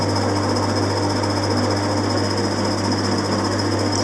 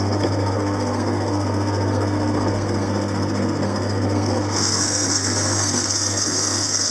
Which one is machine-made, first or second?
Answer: second